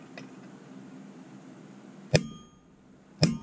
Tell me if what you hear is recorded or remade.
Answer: recorded